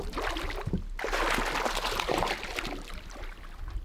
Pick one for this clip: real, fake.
real